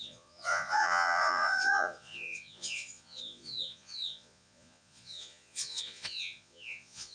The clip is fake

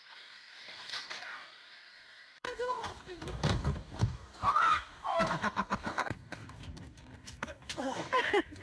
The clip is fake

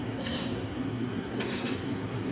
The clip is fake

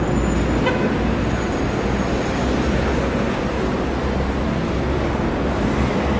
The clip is real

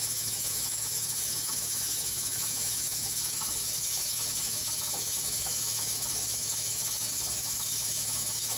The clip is fake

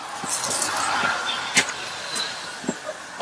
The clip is real